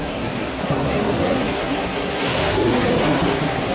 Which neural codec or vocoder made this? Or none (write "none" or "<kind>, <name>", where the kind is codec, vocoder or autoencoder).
codec, SNAC